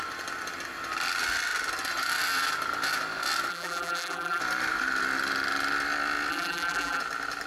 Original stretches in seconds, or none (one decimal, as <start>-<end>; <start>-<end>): 0.0-3.5; 4.4-6.3; 7.0-7.5